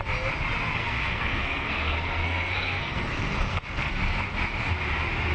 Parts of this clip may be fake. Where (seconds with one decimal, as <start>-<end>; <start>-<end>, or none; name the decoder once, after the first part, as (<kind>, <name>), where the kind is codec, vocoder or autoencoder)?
0.7-3.9 (codec, SNAC)